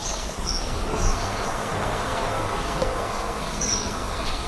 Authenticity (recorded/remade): remade